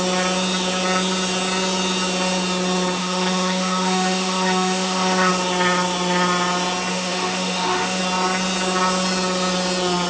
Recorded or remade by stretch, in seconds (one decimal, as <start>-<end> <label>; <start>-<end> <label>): 0.0-3.0 recorded; 3.0-5.3 remade; 5.3-6.9 recorded; 6.9-8.0 remade; 8.0-10.1 recorded